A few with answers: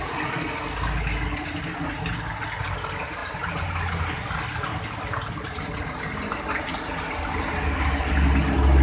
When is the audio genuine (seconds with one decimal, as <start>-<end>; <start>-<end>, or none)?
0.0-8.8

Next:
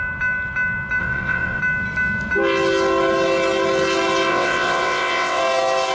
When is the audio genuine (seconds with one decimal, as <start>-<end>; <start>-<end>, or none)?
0.0-1.0; 1.6-4.3; 5.4-5.9

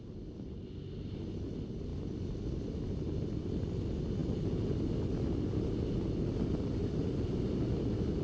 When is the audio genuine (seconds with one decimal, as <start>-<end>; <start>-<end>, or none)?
0.0-8.2

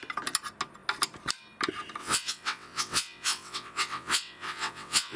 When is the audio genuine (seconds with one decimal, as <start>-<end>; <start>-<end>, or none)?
0.0-2.0

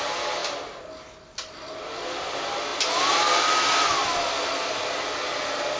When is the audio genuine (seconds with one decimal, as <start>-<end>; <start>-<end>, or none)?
0.0-5.8